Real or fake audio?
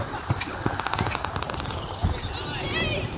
real